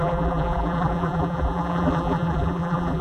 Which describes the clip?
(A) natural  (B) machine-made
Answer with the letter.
B